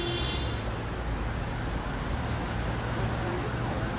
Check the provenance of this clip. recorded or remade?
recorded